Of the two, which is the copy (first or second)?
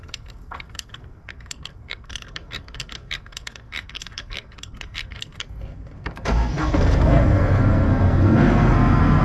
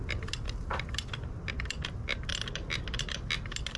first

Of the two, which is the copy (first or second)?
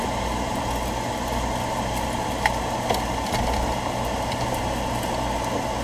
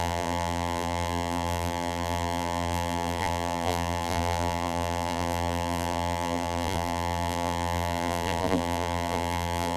second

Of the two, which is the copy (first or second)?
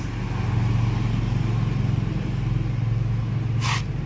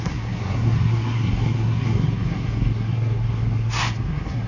second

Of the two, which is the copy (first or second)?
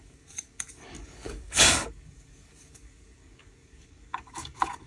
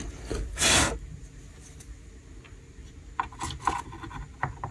first